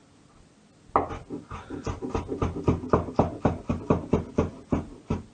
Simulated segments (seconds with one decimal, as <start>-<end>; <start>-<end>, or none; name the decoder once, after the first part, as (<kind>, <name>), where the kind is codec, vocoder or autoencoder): none